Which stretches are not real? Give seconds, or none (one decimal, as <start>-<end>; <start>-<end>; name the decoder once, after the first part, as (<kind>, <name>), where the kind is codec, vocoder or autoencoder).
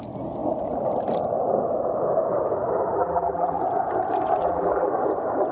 3.0-3.6 (vocoder, BigVGAN v2); 4.4-4.9